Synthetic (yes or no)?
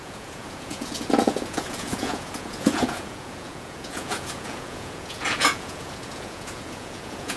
yes